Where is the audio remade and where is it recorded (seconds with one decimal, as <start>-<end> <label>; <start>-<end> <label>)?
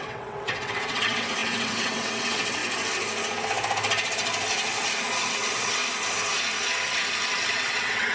0.0-2.6 remade; 2.6-5.3 recorded; 5.3-5.8 remade; 5.8-7.3 recorded; 7.3-8.1 remade